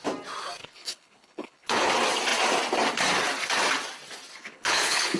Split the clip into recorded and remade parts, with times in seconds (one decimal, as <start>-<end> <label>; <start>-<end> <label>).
0.0-0.6 recorded; 0.6-1.9 remade; 1.9-4.4 recorded; 4.4-5.2 remade

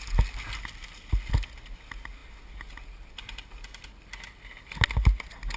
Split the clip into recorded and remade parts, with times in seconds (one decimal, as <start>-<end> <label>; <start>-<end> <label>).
0.0-5.6 recorded

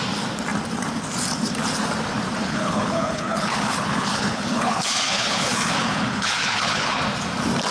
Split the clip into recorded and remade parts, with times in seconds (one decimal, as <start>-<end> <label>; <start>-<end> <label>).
0.0-2.4 recorded; 2.4-7.0 remade; 7.0-7.7 recorded

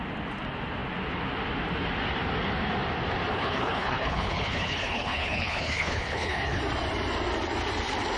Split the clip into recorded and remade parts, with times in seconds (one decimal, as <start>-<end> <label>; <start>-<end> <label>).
0.0-3.3 recorded; 3.3-6.6 remade; 6.6-8.2 recorded

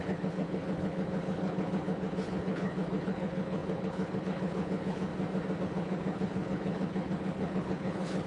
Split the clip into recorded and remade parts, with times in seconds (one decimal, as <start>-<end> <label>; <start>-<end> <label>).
0.0-5.1 remade; 5.1-5.6 recorded; 5.6-8.3 remade